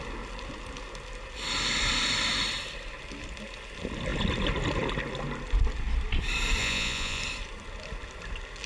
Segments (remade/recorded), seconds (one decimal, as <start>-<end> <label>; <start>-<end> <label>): 0.0-6.6 recorded; 6.6-7.2 remade; 7.2-8.7 recorded